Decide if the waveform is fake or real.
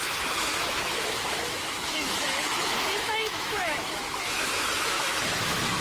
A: fake